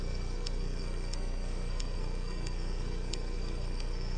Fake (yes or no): yes